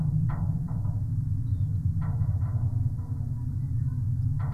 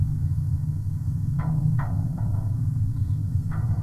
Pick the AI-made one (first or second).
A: second